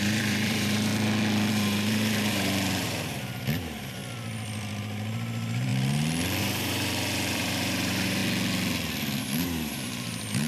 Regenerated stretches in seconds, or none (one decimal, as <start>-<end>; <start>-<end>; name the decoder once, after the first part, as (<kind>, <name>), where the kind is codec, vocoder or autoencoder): 0.0-0.9 (vocoder, BigVGAN v2); 1.5-4.0; 4.8-5.7; 6.4-8.2; 9.2-10.5